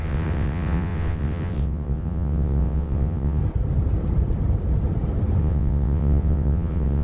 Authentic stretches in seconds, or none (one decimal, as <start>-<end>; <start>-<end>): 3.4-5.4